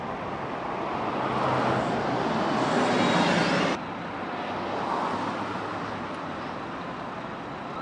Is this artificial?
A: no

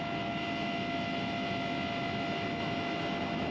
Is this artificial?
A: no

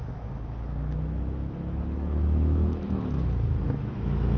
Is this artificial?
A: yes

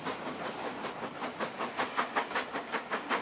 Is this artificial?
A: no